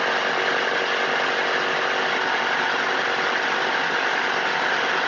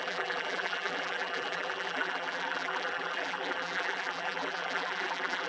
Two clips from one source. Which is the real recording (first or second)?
first